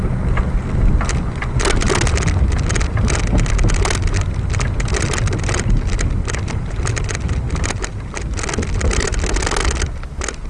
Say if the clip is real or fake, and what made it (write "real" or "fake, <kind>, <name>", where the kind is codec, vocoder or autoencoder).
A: real